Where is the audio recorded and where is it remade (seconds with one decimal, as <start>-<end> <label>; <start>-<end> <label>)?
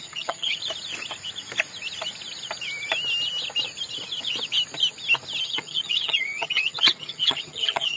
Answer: 0.0-0.6 remade; 0.6-5.4 recorded; 5.4-8.0 remade